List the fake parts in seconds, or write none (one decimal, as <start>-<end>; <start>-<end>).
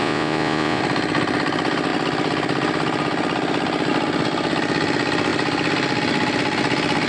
0.0-0.8